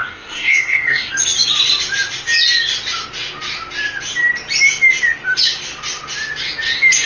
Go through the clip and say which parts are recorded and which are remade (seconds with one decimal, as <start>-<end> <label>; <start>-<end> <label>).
0.0-1.1 remade; 1.1-7.1 recorded